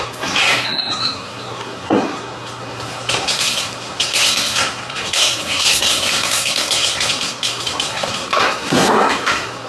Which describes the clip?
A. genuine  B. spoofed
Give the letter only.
B